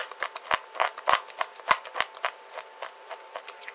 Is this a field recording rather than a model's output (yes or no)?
yes